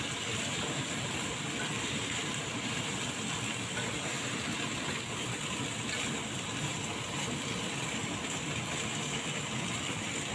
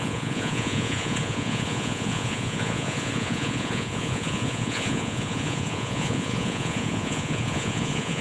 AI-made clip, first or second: second